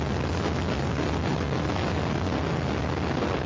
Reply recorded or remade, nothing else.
recorded